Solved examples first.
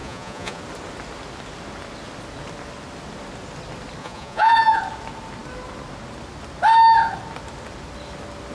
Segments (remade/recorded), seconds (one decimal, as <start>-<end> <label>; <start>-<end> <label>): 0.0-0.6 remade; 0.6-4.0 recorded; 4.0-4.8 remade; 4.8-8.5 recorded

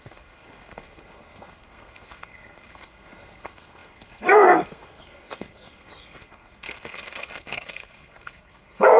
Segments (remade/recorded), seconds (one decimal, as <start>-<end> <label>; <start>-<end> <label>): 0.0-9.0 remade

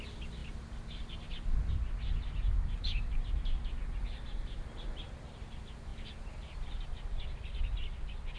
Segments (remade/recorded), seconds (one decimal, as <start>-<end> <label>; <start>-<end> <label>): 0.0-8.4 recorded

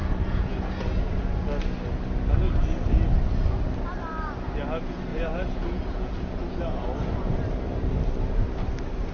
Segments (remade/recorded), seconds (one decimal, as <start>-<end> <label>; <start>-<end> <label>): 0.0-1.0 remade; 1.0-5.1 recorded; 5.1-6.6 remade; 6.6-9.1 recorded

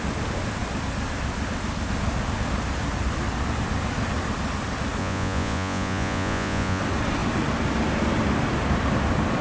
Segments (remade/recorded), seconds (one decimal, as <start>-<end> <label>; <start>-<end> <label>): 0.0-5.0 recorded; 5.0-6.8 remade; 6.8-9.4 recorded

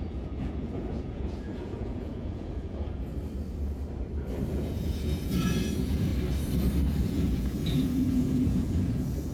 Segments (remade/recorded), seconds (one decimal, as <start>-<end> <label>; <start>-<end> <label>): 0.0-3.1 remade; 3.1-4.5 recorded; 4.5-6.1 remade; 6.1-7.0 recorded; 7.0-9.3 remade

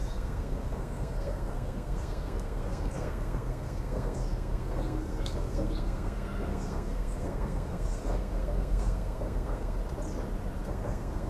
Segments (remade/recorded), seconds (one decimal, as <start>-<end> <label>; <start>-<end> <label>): 0.0-9.8 remade; 9.8-10.6 recorded; 10.6-11.3 remade

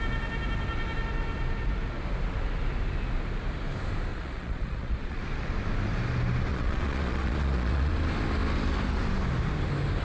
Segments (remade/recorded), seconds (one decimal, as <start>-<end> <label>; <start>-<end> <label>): 0.0-4.1 recorded; 4.1-5.2 remade; 5.2-6.5 recorded; 6.5-7.9 remade; 7.9-10.0 recorded